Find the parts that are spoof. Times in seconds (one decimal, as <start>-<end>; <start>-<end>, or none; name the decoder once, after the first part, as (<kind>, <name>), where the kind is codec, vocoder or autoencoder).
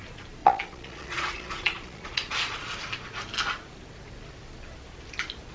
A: 0.4-2.6 (vocoder, Vocos)